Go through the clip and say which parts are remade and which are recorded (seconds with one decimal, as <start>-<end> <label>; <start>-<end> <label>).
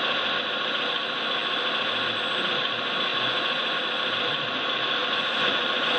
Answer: 0.0-3.1 recorded; 3.1-3.8 remade; 3.8-5.0 recorded; 5.0-6.0 remade